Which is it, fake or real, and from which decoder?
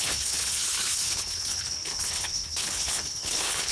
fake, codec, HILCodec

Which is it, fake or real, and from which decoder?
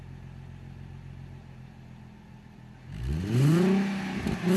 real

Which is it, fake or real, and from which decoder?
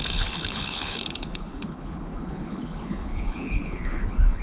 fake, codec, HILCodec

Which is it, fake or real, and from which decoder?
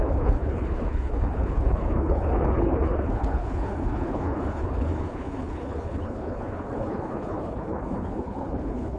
fake, codec, HILCodec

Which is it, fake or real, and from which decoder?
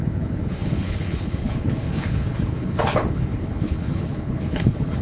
fake, codec, HILCodec